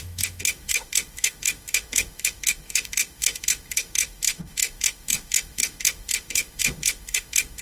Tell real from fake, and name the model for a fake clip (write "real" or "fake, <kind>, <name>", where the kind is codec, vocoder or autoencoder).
fake, autoencoder, DAC-VAE